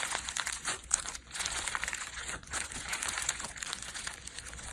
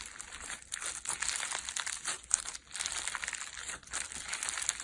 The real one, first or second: second